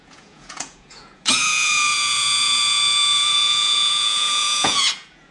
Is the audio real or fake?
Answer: fake